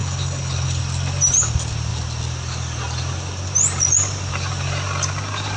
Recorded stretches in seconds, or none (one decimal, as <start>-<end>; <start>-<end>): 0.8-5.6